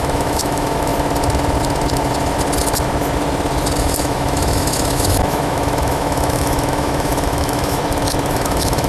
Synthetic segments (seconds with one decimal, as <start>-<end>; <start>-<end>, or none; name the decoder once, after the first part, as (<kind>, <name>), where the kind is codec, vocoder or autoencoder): 0.0-0.9 (autoencoder, DAC-VAE); 3.8-7.8; 8.3-8.9